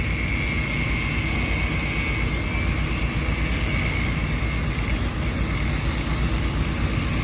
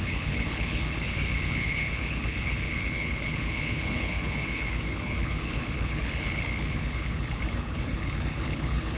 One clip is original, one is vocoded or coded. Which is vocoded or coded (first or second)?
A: second